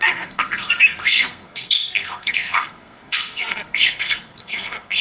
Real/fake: fake